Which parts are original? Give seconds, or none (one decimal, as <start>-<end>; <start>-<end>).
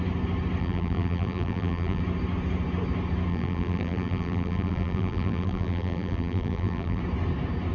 0.0-0.6; 2.0-3.3; 7.0-7.7